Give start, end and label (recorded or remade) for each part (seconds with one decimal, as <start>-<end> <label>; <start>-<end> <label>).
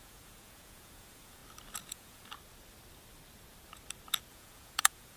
0.0-1.4 remade; 1.4-1.9 recorded; 1.9-2.3 remade; 2.3-4.3 recorded; 4.3-5.2 remade